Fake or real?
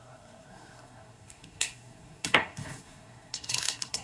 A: fake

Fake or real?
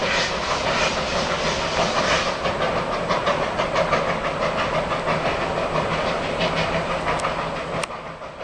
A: real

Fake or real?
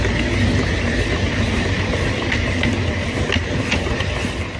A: real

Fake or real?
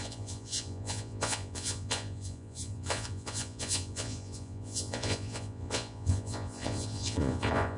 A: fake